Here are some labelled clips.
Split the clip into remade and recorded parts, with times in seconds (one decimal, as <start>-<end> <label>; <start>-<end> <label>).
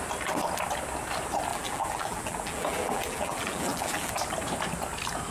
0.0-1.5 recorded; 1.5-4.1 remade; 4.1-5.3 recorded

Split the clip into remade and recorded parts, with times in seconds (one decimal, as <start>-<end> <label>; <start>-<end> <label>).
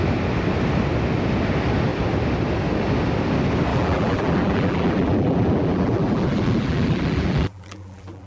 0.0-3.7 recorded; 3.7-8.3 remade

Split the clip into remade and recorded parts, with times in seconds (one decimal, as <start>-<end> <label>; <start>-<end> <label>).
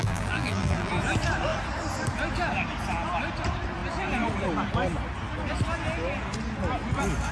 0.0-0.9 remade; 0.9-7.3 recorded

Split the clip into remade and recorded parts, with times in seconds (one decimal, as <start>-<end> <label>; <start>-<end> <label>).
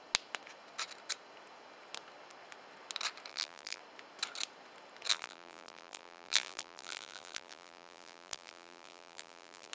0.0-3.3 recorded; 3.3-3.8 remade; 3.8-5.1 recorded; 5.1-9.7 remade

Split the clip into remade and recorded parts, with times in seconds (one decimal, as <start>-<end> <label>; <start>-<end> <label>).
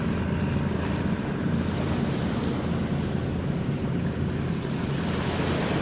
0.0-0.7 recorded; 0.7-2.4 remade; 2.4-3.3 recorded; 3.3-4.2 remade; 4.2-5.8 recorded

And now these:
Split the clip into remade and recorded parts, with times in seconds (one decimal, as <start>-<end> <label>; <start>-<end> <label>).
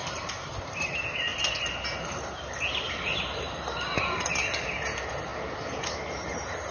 0.0-1.3 remade; 1.3-2.8 recorded; 2.8-5.3 remade; 5.3-5.8 recorded; 5.8-6.7 remade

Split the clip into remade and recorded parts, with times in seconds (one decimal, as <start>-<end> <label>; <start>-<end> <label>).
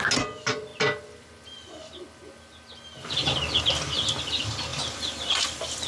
0.0-5.9 recorded